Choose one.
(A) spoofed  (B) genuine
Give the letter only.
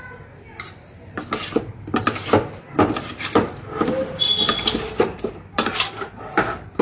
B